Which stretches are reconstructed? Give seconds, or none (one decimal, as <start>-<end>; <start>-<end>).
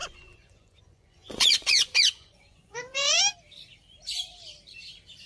0.0-3.2